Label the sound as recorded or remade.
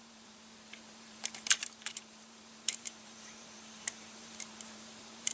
remade